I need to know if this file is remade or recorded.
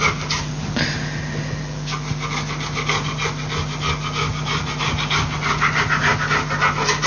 recorded